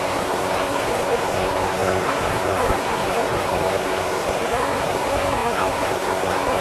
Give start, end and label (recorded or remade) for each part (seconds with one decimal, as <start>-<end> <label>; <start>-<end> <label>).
0.0-6.6 remade